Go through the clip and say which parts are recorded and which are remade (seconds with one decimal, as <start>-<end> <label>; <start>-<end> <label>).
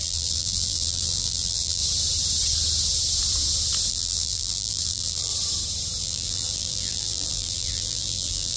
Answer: 0.0-1.8 remade; 1.8-3.9 recorded; 3.9-5.3 remade; 5.3-6.0 recorded; 6.0-8.6 remade